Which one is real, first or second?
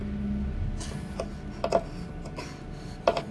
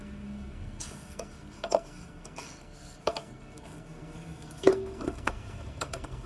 first